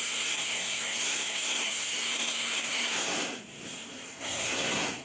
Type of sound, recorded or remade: remade